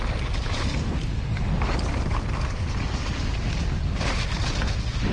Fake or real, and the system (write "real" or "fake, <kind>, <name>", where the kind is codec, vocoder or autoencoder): real